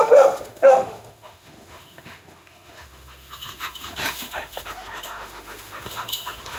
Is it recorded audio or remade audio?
remade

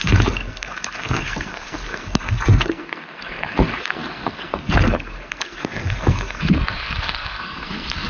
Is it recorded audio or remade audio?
remade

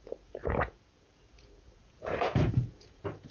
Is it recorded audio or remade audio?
remade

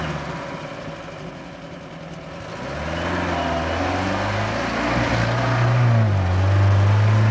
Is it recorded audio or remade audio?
recorded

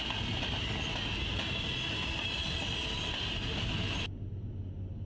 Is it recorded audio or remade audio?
recorded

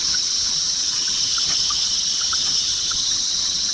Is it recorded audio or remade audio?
remade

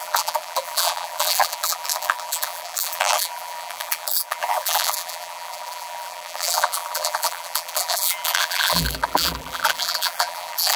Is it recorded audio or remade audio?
remade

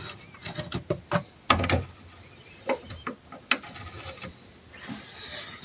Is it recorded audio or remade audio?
recorded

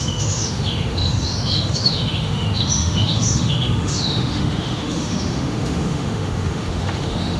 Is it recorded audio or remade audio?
remade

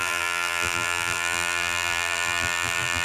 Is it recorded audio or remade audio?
remade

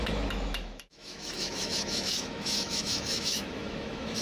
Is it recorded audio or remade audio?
remade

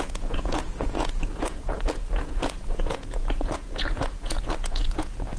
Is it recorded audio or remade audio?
remade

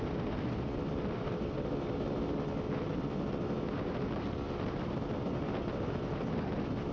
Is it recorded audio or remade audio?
recorded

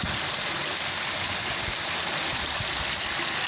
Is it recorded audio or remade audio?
recorded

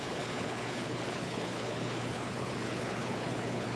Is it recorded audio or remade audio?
remade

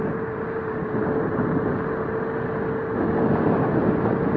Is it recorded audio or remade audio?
recorded